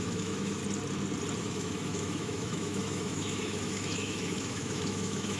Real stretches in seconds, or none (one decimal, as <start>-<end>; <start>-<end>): 0.6-1.4